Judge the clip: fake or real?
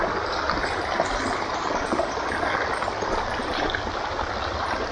real